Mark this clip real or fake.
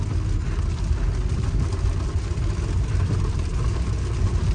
real